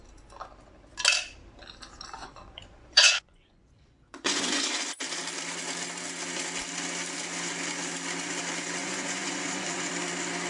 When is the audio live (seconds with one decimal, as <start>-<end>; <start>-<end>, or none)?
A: 0.0-2.2; 4.9-8.8; 9.9-10.5